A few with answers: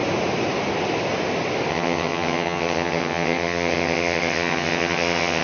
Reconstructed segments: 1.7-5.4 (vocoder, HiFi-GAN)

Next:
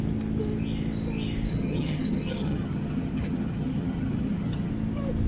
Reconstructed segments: 1.5-4.7 (vocoder, HiFi-GAN)

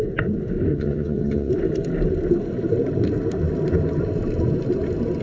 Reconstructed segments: 0.7-1.5 (vocoder, HiFi-GAN)

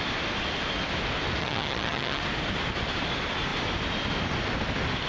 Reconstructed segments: 1.4-2.2 (vocoder, HiFi-GAN)

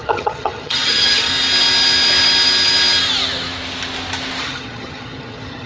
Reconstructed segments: 0.0-1.3 (vocoder, HiFi-GAN); 4.4-5.7